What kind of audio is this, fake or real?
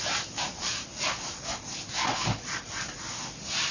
real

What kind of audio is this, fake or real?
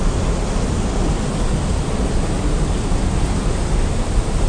real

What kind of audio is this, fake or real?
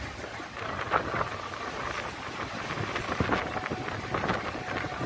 real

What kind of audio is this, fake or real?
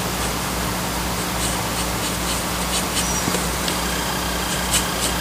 real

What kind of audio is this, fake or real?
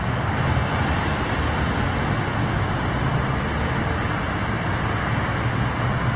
real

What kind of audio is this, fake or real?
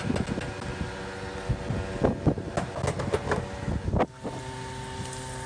real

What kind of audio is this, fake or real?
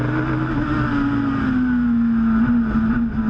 real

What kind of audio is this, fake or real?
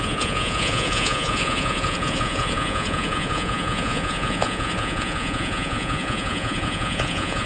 fake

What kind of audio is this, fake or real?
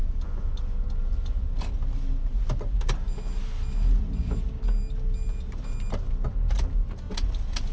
real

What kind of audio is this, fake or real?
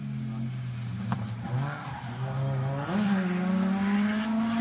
real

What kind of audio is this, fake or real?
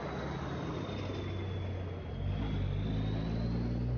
real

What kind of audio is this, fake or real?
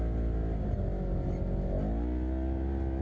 real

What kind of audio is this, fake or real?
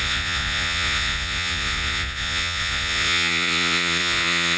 fake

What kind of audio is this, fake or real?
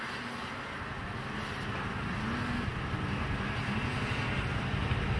real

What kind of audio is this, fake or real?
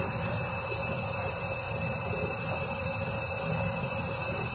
real